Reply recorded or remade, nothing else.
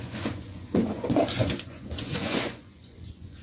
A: remade